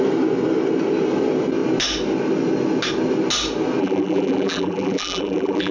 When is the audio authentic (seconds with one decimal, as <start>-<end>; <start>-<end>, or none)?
0.0-3.8